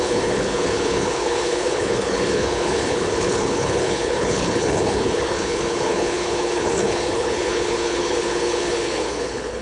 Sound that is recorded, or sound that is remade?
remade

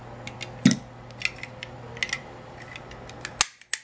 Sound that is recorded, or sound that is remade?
recorded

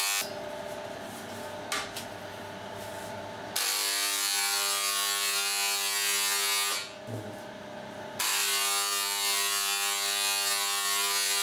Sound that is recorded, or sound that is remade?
recorded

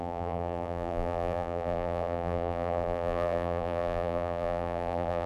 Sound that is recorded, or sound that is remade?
remade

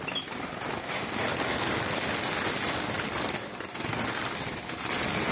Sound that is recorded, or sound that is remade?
recorded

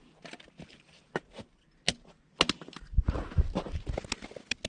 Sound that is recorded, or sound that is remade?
recorded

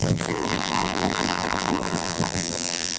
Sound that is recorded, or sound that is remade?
remade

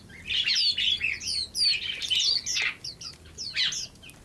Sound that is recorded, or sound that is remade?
recorded